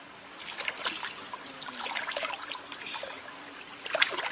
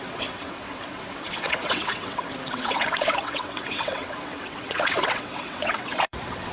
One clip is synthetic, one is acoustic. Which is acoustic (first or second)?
first